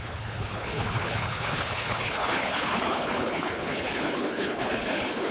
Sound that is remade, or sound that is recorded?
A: remade